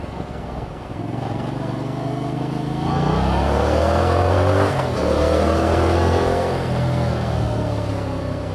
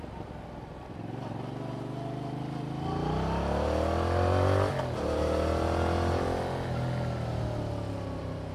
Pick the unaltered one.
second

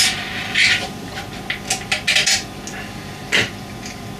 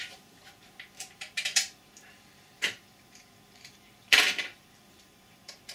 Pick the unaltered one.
first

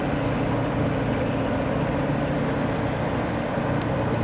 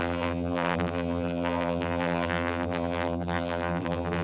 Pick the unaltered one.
first